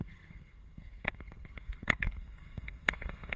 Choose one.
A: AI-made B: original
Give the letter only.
A